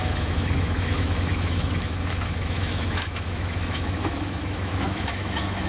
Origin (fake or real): fake